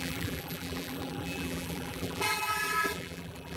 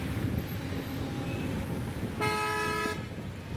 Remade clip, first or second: first